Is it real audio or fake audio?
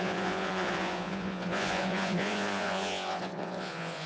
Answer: fake